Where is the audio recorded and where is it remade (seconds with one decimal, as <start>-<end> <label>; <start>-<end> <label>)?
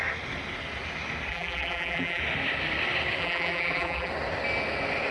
0.0-1.3 recorded; 1.3-2.2 remade; 2.2-3.2 recorded; 3.2-4.1 remade; 4.1-5.1 recorded